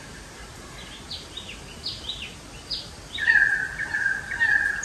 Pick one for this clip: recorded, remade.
remade